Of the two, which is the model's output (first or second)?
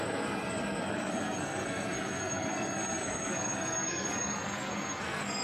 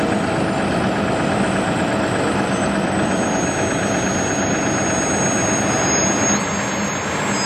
first